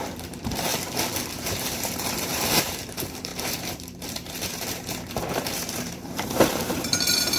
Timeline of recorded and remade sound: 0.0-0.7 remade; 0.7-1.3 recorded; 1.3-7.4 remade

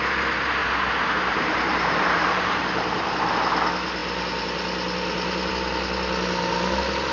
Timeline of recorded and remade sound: 0.0-0.6 recorded; 0.6-3.1 remade; 3.1-7.1 recorded

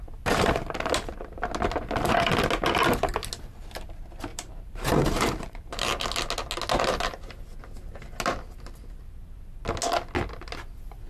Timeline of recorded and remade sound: 0.0-4.3 recorded; 4.3-6.0 remade; 6.0-11.1 recorded

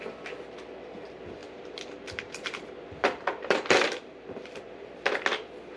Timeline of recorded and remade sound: 0.0-1.4 recorded; 1.4-4.9 remade; 4.9-5.8 recorded

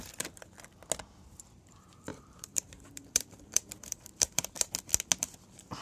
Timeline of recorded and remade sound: 0.0-2.1 recorded; 2.1-4.7 remade; 4.7-5.8 recorded